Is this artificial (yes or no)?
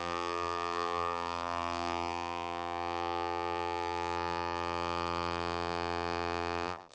yes